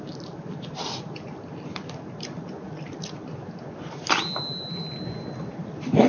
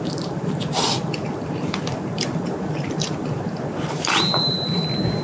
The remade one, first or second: second